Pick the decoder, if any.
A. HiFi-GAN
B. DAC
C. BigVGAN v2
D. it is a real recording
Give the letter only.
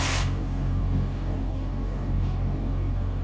B